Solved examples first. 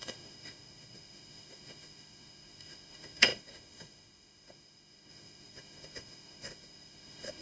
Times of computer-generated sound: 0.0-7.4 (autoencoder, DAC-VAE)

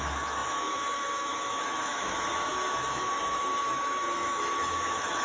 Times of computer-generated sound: 0.0-5.2 (autoencoder, DAC-VAE)

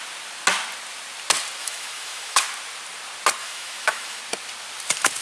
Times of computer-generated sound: 1.6-2.4 (autoencoder, DAC-VAE); 3.4-4.2

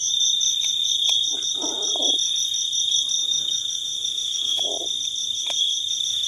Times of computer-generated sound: 3.2-4.7 (autoencoder, DAC-VAE); 5.2-6.3

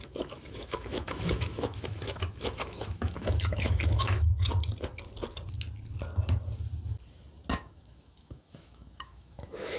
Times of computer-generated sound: 0.0-4.5 (autoencoder, DAC-VAE); 7.5-9.8